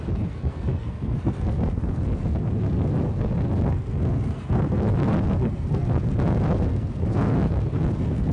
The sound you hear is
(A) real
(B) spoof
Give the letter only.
B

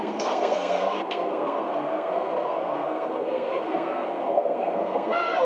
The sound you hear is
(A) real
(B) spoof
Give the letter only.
B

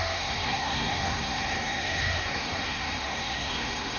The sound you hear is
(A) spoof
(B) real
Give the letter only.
A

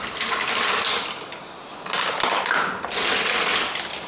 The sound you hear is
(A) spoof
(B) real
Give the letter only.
B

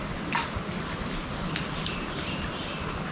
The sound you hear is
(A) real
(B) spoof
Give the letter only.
A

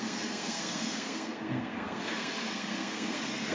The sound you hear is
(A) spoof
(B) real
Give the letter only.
A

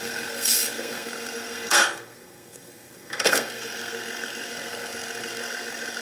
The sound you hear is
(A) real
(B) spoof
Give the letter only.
B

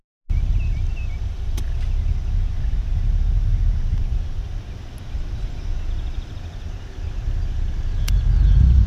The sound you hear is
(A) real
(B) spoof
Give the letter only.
A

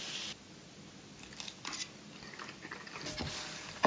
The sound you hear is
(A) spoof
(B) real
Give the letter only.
B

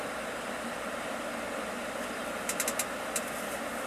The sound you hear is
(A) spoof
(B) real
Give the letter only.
B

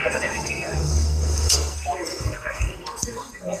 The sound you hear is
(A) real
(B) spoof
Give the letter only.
B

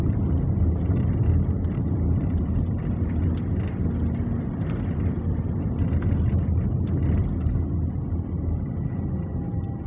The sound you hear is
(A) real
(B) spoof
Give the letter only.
A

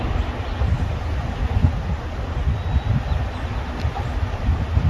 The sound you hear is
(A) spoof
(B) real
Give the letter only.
B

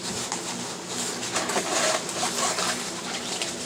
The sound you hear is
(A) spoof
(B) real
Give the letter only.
B